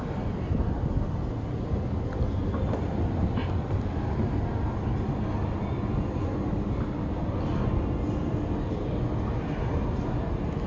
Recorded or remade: recorded